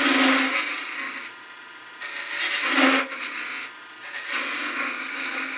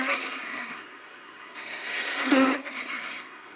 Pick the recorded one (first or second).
first